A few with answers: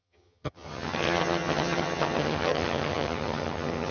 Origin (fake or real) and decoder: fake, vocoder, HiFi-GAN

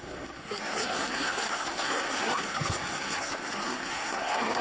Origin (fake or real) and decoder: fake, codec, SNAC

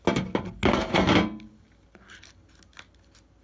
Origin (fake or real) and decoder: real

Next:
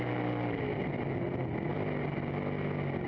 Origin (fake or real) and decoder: real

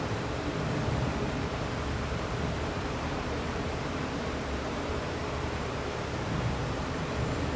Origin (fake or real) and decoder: fake, vocoder, BigVGAN v2